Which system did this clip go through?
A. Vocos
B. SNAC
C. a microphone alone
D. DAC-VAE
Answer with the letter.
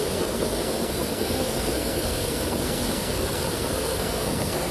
B